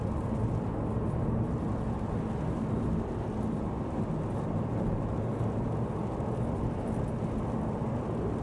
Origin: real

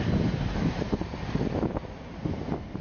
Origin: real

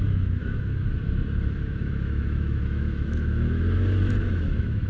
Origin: fake